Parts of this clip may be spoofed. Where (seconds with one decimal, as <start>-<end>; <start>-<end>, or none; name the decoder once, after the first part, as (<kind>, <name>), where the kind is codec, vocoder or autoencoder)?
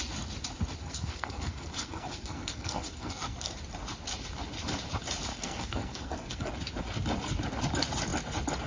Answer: 0.8-3.5 (codec, SNAC); 5.3-6.5